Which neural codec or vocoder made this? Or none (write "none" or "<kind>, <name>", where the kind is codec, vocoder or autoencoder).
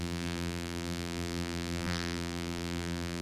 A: vocoder, BigVGAN v2